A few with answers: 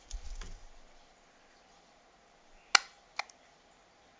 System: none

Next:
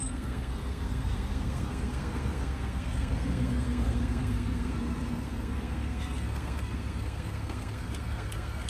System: codec, SNAC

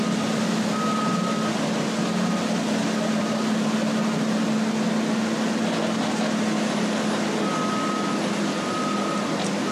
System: none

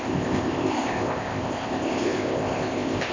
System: codec, ZipCodec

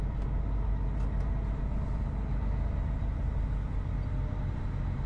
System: none